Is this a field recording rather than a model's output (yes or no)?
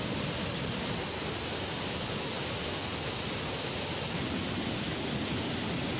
yes